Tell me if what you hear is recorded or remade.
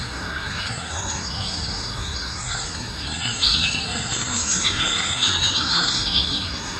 remade